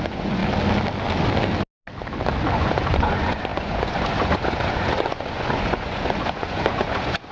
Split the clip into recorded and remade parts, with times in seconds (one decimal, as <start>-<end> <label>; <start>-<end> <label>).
0.0-0.4 remade; 0.4-2.6 recorded; 2.6-7.3 remade